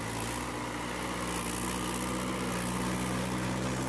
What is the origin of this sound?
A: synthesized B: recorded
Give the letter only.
B